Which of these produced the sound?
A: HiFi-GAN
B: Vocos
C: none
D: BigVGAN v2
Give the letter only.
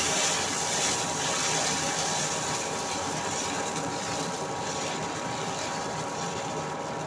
D